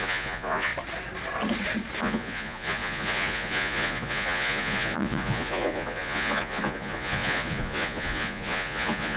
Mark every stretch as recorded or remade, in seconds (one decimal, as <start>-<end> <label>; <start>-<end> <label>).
0.0-0.7 remade; 0.7-2.0 recorded; 2.0-9.2 remade